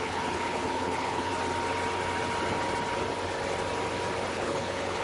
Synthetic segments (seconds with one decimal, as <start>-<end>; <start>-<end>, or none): 0.0-1.3; 4.3-5.0